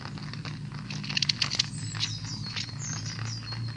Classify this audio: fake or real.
real